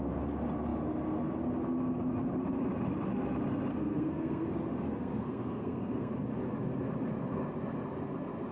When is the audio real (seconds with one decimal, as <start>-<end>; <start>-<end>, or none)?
0.0-3.7; 4.5-5.0; 6.1-8.5

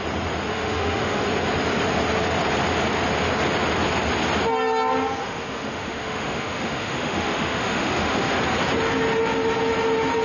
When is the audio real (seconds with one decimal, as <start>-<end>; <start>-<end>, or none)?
0.0-0.5; 1.2-5.2; 8.4-10.2

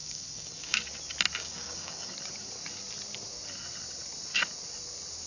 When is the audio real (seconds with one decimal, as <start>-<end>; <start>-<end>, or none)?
0.8-1.4; 2.1-5.3

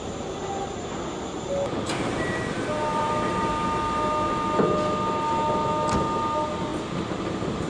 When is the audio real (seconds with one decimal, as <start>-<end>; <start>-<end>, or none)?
0.0-2.9; 3.5-7.7

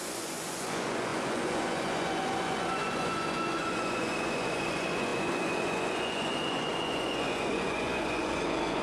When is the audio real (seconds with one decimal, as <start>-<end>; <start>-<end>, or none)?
none